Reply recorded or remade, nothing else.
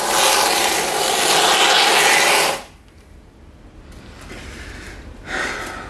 recorded